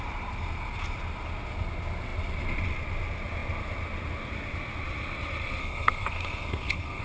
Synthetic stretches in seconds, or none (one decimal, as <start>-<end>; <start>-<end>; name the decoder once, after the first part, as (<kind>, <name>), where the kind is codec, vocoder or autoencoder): 5.6-7.0 (codec, SNAC)